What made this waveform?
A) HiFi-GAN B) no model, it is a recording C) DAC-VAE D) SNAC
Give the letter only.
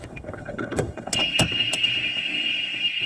D